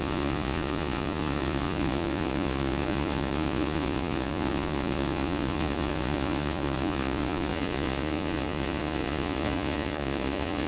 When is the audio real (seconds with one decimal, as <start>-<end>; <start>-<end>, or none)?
none